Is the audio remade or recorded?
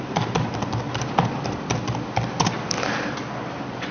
recorded